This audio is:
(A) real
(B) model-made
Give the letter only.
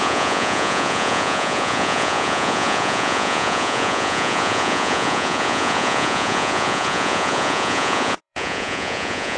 B